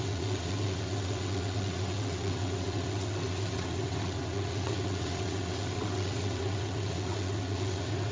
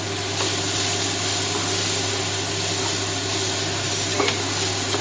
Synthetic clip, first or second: first